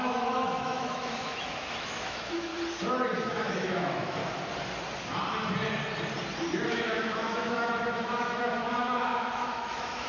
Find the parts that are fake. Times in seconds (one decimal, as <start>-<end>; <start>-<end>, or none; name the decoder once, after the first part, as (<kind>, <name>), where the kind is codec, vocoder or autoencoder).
0.0-2.5 (autoencoder, DAC-VAE); 3.3-4.2; 6.7-10.1